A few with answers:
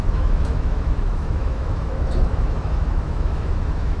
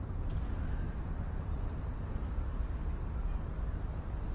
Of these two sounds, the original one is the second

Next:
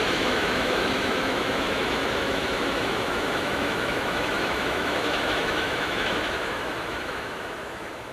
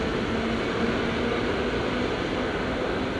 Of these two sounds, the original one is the second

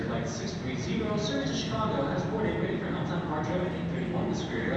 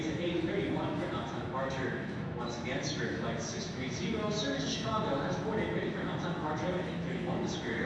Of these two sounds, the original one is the first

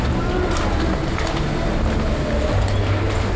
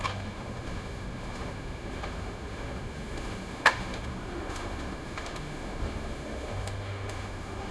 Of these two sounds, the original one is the first